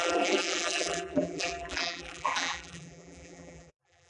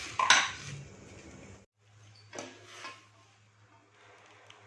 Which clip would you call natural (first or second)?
second